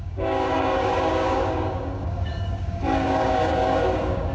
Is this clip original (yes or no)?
no